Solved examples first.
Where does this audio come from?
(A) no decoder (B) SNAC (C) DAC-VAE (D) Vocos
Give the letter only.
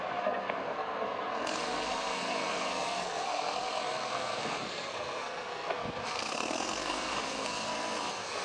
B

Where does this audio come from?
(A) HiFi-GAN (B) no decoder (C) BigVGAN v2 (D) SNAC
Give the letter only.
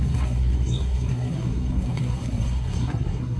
D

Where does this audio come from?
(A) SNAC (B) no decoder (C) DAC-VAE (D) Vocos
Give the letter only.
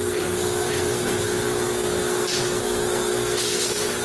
A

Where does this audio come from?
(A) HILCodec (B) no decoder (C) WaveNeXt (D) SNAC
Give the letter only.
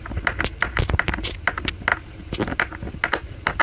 B